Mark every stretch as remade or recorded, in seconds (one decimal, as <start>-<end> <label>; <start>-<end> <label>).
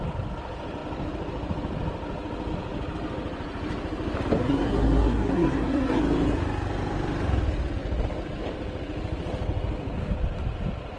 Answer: 0.0-4.4 recorded; 4.4-6.0 remade; 6.0-11.0 recorded